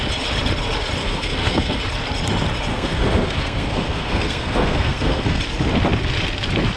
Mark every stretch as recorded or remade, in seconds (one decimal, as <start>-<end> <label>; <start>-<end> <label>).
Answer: 0.0-1.0 recorded; 1.0-1.8 remade; 1.8-2.7 recorded; 2.7-5.4 remade; 5.4-6.8 recorded